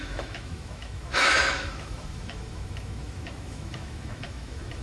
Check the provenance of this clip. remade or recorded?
remade